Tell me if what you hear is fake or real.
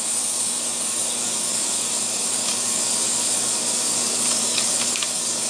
fake